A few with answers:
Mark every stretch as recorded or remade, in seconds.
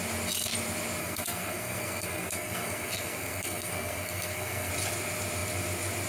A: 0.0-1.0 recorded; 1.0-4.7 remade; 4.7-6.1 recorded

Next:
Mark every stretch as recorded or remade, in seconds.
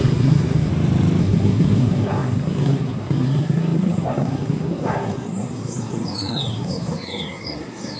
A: 0.0-0.7 remade; 0.7-1.2 recorded; 1.2-8.0 remade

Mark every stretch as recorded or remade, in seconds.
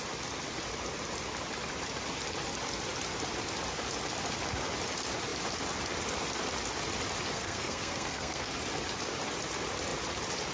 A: 0.0-7.3 recorded; 7.3-8.5 remade; 8.5-10.5 recorded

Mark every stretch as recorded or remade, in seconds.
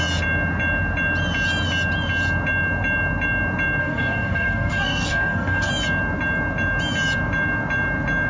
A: 0.0-3.8 recorded; 3.8-5.7 remade; 5.7-8.3 recorded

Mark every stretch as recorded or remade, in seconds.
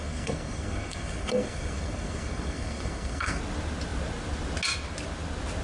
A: 0.0-3.4 remade; 3.4-5.6 recorded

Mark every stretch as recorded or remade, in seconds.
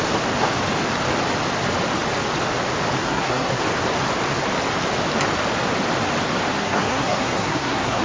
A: 0.0-3.0 recorded; 3.0-3.6 remade; 3.6-6.6 recorded; 6.6-8.0 remade